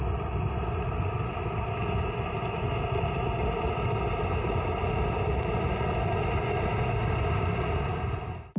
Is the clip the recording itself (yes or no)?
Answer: yes